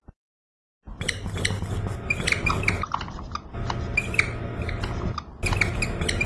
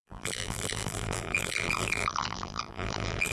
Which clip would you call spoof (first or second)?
second